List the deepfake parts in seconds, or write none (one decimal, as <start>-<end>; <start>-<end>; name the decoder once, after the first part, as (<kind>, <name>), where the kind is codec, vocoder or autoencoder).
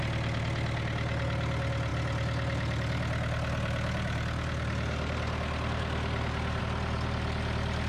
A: none